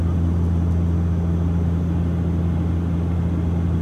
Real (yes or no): yes